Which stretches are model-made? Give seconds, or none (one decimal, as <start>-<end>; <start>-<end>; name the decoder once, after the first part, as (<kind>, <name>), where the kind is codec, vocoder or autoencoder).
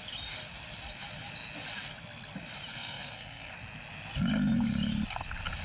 2.7-3.5 (codec, SNAC)